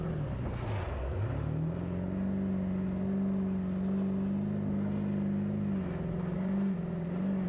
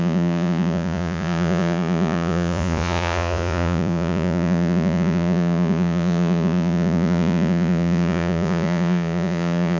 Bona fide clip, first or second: first